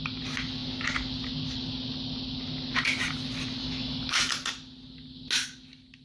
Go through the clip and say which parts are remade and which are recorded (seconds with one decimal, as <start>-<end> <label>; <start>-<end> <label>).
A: 0.0-3.6 recorded; 3.6-4.3 remade; 4.3-6.0 recorded